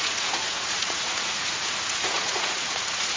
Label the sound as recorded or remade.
remade